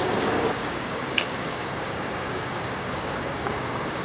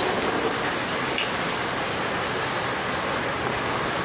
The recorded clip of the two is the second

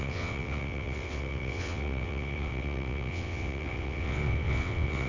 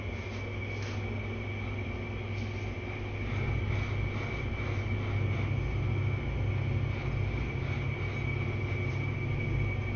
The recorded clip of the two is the second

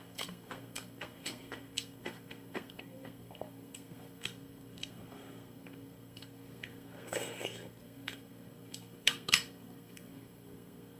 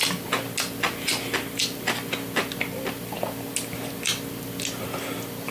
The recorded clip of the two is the second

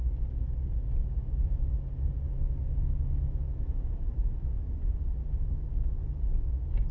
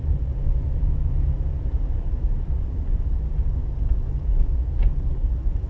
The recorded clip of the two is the first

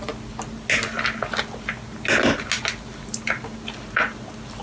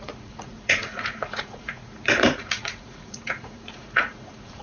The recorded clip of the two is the first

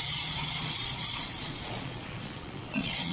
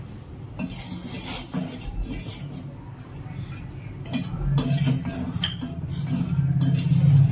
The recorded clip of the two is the second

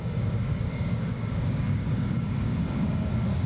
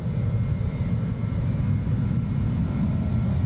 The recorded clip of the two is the second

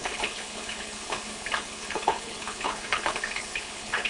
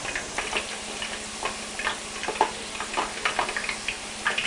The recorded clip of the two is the second